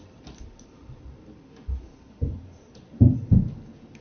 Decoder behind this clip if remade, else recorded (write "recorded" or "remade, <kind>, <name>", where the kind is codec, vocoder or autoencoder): recorded